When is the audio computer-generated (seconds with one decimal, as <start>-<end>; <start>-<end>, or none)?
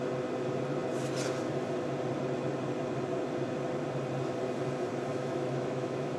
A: 5.1-6.2